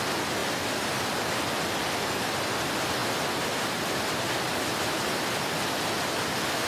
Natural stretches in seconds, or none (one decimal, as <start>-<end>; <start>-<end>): 0.0-6.7